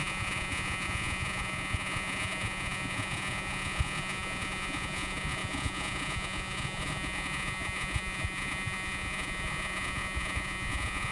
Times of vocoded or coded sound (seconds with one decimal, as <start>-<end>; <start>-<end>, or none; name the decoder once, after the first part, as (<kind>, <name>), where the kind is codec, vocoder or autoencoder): 0.0-11.1 (vocoder, Vocos)